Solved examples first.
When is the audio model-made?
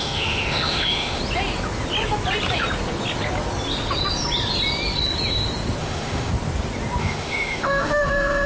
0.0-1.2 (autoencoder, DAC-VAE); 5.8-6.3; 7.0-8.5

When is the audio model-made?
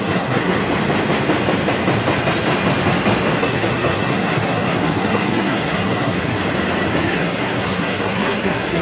0.0-0.6 (codec, SNAC); 3.4-6.4; 6.9-8.8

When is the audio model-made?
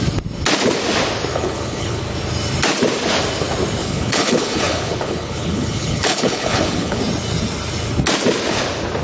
1.3-2.0 (codec, HILCodec); 3.8-7.0